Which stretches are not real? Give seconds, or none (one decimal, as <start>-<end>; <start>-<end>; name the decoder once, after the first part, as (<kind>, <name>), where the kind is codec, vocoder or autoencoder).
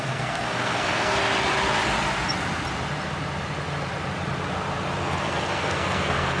0.0-1.2 (codec, SNAC); 5.0-6.4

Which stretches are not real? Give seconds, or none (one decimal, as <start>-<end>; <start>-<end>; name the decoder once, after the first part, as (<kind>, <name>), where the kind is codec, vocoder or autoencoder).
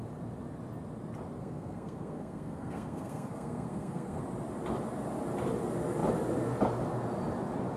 1.4-4.2 (codec, SNAC)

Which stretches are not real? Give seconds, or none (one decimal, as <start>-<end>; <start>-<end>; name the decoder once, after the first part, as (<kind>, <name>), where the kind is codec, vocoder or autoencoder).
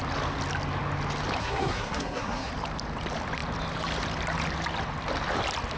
1.4-2.5 (codec, SNAC)